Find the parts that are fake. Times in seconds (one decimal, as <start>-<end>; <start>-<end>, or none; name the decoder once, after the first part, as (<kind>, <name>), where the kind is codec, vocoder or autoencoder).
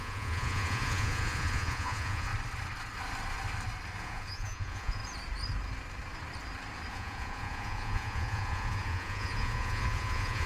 0.0-2.3 (vocoder, Vocos); 4.0-5.0; 6.9-10.5